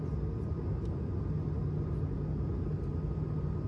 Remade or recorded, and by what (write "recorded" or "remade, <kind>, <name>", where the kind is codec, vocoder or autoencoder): recorded